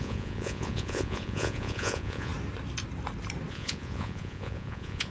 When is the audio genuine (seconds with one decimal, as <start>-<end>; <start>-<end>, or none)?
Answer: 2.3-3.5